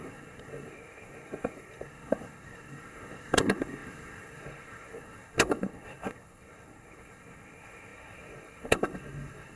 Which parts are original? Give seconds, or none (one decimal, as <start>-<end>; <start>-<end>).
none

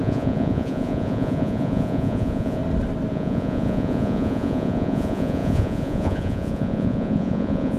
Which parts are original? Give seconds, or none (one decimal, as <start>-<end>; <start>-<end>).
2.6-3.1